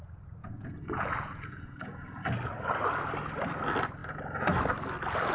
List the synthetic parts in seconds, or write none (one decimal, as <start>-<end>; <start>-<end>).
0.4-2.2